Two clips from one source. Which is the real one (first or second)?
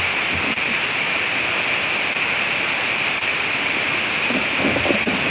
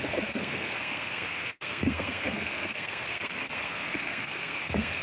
first